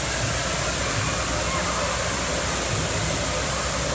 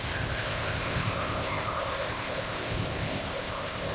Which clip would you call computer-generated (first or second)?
second